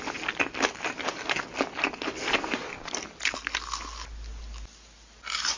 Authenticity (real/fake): real